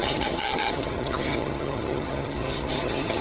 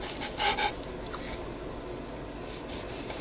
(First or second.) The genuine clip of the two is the second